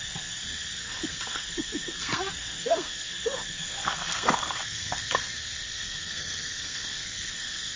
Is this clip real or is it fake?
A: fake